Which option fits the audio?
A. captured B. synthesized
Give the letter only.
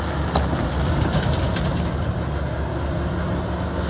A